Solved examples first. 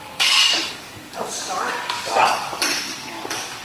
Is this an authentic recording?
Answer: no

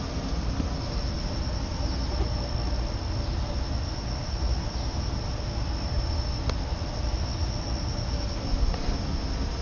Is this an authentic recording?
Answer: yes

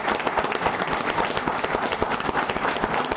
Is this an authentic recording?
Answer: yes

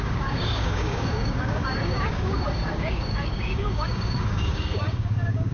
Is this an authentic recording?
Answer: no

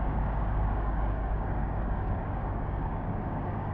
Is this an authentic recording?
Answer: no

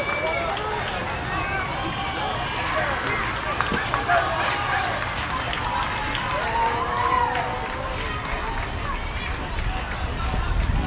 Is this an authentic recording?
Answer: yes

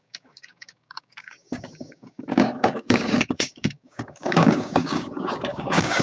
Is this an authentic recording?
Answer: no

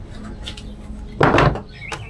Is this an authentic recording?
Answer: yes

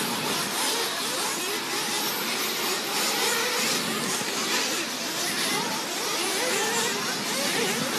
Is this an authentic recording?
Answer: yes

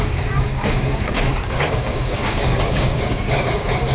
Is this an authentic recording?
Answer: no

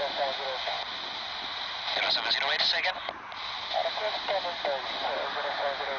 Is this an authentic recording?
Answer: yes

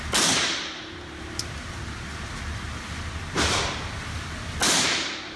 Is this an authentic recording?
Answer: yes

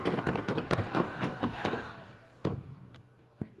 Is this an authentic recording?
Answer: no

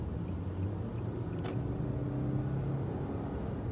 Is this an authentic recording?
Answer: yes